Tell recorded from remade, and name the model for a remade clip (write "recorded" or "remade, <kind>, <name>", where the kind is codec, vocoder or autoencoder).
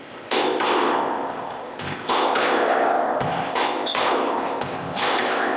remade, codec, ZipCodec